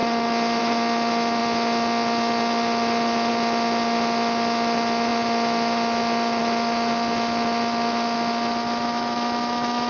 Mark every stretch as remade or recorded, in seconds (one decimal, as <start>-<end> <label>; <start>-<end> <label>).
0.0-9.9 recorded